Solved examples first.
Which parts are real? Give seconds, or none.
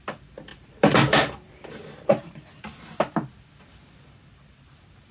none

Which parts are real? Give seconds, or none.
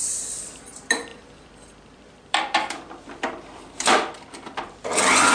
none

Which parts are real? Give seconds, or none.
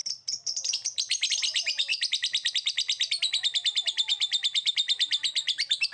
none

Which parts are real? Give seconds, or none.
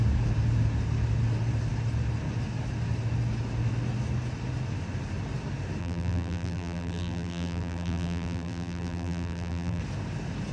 0.0-5.8; 9.8-10.5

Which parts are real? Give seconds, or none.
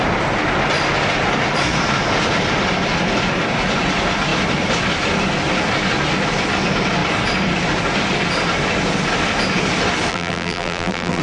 0.0-10.1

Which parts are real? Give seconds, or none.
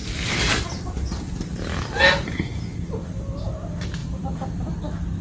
2.0-2.7; 3.2-4.0; 4.7-5.2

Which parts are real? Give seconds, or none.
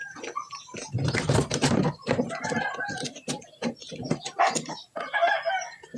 0.0-3.8; 5.3-6.0